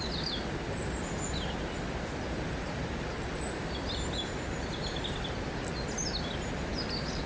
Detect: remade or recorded recorded